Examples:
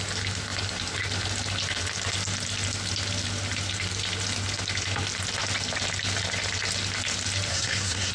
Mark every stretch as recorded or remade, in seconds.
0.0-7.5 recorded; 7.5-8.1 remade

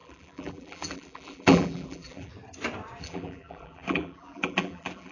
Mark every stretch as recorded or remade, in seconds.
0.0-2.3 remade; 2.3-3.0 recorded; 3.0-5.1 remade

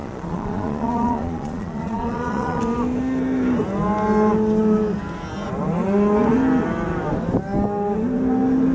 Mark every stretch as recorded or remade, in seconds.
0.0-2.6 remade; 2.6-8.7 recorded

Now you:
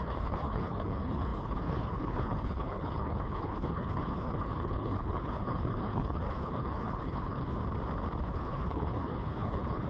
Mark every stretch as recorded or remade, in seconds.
0.0-7.6 remade; 7.6-8.2 recorded; 8.2-9.9 remade

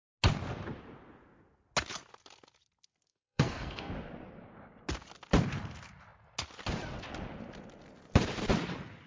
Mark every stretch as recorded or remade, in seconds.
0.0-3.1 recorded; 3.1-3.9 remade; 3.9-9.1 recorded